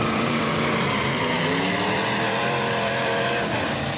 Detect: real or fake fake